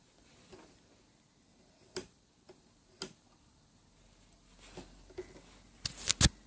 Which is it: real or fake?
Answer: real